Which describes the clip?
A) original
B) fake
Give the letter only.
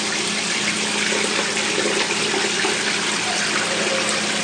A